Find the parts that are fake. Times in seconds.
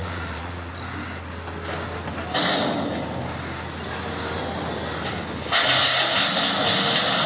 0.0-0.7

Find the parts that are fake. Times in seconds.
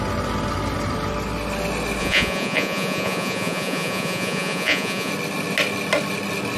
2.0-5.1